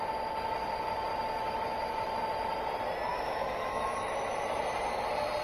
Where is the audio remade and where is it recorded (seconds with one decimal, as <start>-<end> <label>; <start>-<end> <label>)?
0.0-1.1 recorded; 1.1-2.2 remade; 2.2-3.1 recorded; 3.1-4.1 remade; 4.1-5.4 recorded

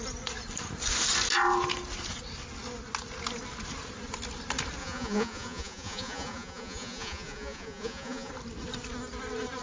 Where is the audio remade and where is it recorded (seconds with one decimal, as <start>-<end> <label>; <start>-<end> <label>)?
0.0-4.8 recorded; 4.8-8.3 remade; 8.3-9.6 recorded

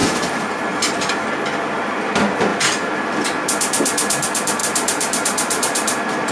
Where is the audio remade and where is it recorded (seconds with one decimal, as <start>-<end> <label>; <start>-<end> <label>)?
0.0-1.1 remade; 1.1-2.5 recorded; 2.5-3.0 remade; 3.0-4.6 recorded; 4.6-6.3 remade

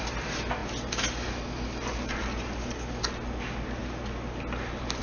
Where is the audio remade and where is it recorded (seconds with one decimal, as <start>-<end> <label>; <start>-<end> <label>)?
0.0-5.0 recorded

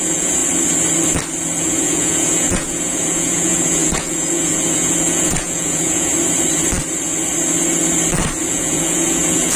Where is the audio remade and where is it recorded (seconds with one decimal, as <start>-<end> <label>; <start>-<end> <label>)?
0.0-0.4 remade; 0.4-1.6 recorded; 1.6-6.1 remade; 6.1-8.5 recorded; 8.5-9.6 remade

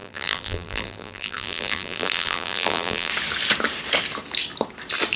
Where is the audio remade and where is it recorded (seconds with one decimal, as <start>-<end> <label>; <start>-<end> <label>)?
0.0-3.1 remade; 3.1-5.2 recorded

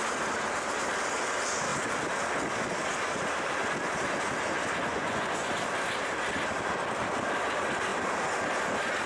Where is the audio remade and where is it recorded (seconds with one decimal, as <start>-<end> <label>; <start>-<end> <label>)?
0.0-4.9 recorded; 4.9-5.5 remade; 5.5-9.1 recorded

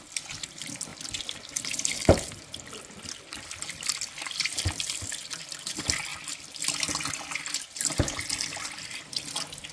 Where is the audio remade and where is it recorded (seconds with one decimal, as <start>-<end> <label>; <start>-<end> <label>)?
0.0-9.7 recorded